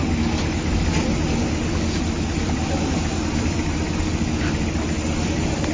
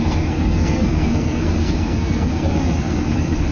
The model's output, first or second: second